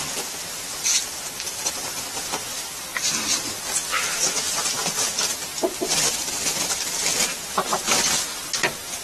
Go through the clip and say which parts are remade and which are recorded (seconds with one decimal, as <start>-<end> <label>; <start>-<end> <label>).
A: 0.0-9.0 recorded